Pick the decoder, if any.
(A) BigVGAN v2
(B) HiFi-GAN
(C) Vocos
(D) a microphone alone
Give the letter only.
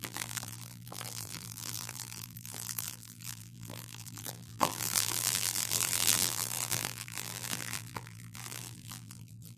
A